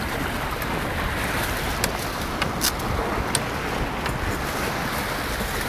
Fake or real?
real